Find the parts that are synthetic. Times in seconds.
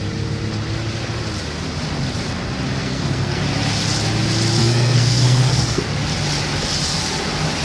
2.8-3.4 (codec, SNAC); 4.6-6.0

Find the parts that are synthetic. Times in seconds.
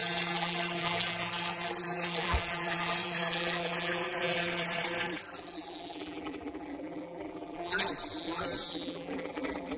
0.0-9.8 (vocoder, BigVGAN v2)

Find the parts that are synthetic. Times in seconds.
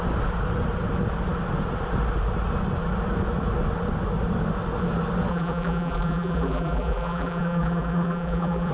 5.3-8.7 (vocoder, BigVGAN v2)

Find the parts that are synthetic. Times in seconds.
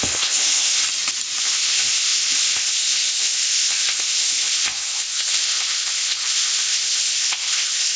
0.0-0.8 (codec, ZipCodec); 1.4-8.0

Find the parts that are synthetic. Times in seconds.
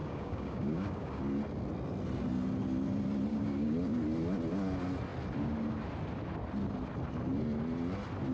0.0-1.2 (codec, DAC); 3.3-4.0